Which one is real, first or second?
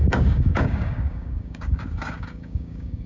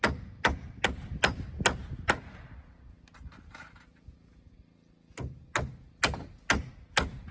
second